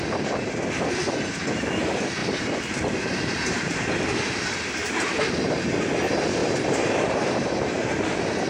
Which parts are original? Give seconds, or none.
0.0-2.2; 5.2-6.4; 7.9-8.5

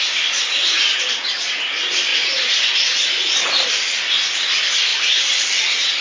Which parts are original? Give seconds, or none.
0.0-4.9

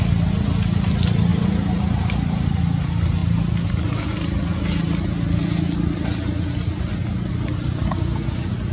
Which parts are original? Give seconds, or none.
0.0-1.3; 2.6-8.7

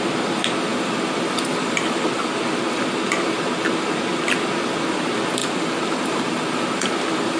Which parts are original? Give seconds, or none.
0.0-0.7; 2.1-5.4